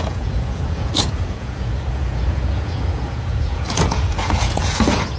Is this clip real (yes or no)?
no